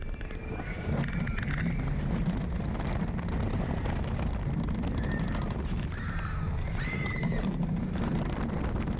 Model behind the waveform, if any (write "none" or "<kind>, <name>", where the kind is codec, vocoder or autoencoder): none